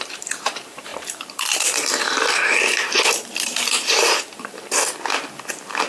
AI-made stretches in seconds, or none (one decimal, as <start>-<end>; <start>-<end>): 0.0-5.9